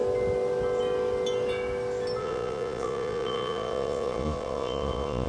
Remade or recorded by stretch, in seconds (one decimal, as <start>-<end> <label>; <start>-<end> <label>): 0.0-2.2 recorded; 2.2-5.3 remade